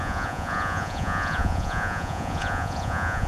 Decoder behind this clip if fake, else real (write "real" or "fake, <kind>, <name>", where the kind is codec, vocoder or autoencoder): fake, vocoder, Vocos